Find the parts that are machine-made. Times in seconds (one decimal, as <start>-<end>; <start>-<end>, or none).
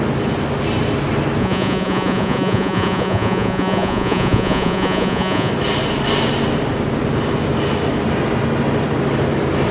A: 1.4-5.5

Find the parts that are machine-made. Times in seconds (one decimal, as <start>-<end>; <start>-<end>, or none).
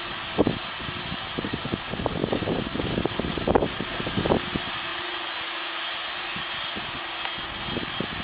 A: none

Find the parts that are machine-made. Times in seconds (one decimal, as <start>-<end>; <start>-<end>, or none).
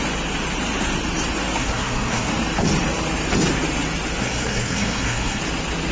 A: 1.6-2.3; 4.2-5.4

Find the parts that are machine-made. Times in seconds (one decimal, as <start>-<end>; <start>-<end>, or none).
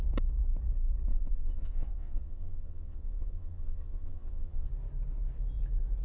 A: 1.1-4.7